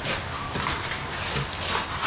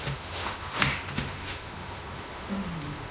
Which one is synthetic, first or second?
second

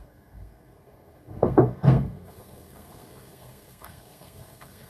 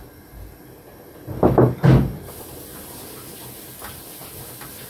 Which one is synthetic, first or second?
first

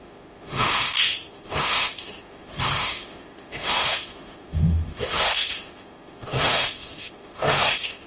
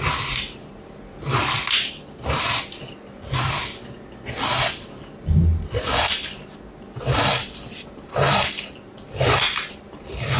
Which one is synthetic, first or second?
first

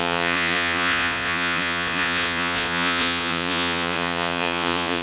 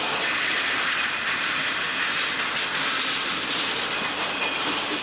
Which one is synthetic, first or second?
first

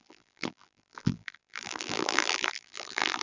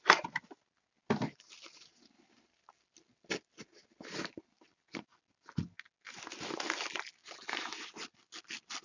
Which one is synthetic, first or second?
first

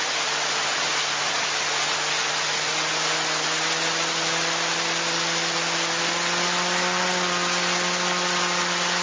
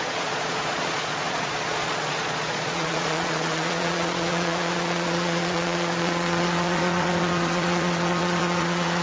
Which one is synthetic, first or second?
second